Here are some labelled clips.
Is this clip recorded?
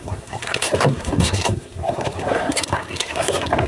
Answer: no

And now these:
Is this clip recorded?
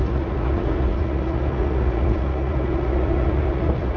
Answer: no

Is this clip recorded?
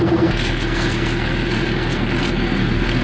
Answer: no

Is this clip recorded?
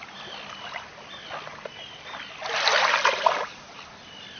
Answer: yes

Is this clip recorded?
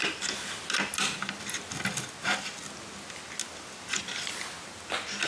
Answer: yes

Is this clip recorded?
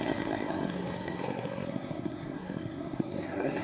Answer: no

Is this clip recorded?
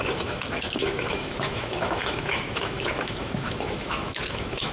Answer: no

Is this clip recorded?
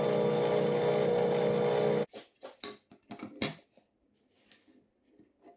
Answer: yes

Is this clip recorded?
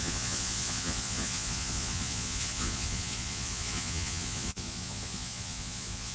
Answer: no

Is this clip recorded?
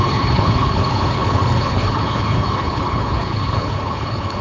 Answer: no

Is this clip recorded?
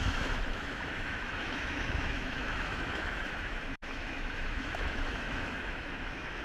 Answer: no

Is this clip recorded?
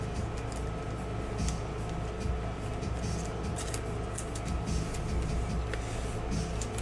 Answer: yes